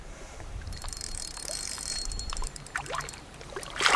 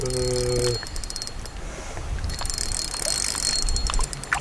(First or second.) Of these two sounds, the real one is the second